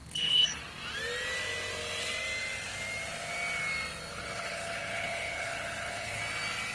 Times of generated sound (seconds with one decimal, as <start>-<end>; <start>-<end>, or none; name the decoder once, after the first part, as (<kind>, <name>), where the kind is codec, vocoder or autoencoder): 0.0-0.6 (codec, HILCodec); 4.1-6.2